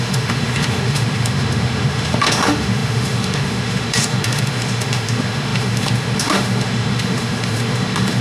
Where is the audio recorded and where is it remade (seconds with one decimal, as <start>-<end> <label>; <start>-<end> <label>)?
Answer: 0.0-8.2 remade